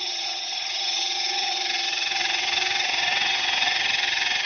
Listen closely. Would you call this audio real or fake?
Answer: fake